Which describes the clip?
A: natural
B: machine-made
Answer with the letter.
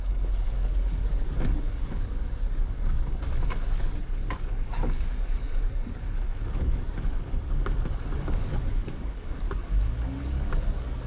B